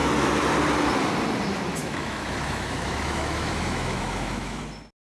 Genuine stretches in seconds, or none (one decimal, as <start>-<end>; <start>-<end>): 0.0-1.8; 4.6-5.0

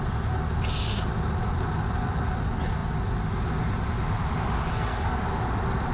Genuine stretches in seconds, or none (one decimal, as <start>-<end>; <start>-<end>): 0.0-4.7; 5.2-5.9

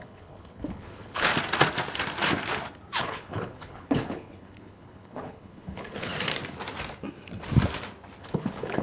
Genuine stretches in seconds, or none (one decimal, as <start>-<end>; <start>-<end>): 1.3-3.0; 6.1-8.2

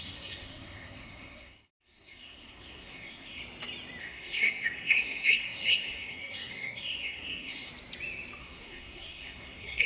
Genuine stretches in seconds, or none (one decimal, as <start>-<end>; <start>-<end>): 3.4-4.0; 7.7-8.4